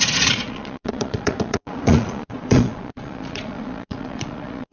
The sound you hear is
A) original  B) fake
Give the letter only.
B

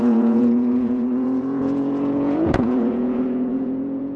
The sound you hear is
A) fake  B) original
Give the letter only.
A